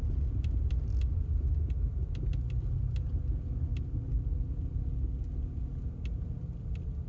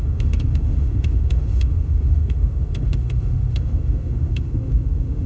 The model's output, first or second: second